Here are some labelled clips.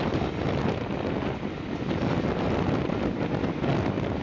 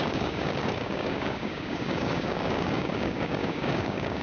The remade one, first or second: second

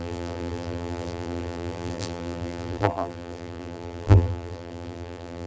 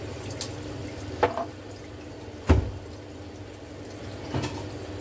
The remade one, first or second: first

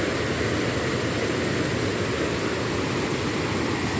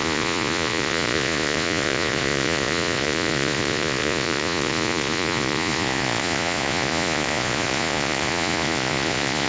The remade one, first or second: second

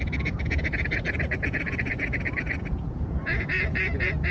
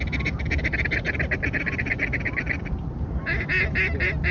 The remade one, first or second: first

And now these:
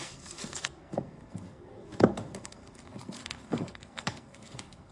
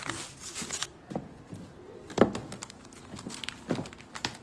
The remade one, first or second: first